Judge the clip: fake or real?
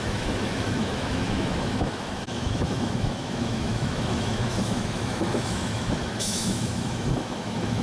fake